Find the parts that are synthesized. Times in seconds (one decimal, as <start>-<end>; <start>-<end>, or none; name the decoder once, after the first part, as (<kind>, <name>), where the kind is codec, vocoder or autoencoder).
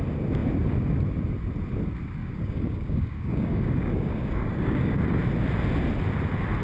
2.2-5.2 (codec, DAC)